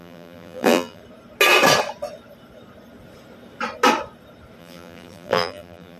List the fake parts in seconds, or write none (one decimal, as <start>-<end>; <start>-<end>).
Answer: 0.0-1.0; 4.6-6.0